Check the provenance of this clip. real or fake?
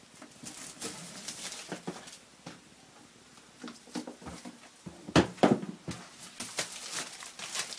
real